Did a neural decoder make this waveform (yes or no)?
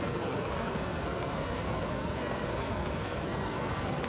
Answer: yes